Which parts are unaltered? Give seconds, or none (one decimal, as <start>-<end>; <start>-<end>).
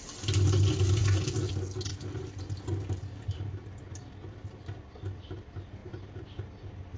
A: 0.0-7.0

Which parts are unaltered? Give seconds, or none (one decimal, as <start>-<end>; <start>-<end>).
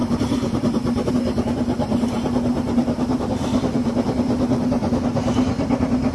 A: 1.1-6.1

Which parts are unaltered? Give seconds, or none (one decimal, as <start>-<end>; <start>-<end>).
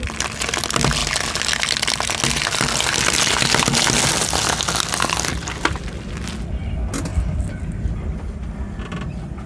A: 0.0-9.5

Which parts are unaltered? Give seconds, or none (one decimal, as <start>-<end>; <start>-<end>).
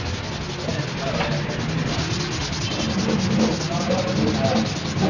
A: 0.0-5.1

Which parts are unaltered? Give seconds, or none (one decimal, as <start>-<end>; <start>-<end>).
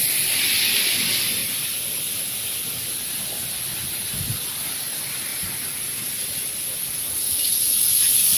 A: 0.0-1.4; 2.0-8.4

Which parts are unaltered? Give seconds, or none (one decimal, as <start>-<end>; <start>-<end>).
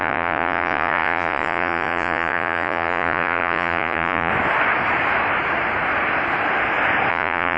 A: 4.3-7.1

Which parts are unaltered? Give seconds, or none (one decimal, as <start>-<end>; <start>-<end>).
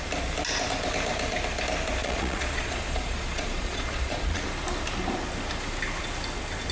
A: 0.0-2.0; 4.4-6.7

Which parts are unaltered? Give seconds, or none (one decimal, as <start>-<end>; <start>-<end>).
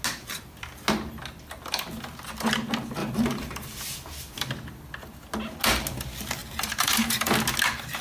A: 0.0-3.0; 4.5-6.4; 7.3-8.0